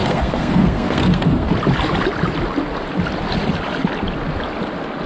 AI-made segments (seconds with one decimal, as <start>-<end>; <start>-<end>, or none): 0.0-1.5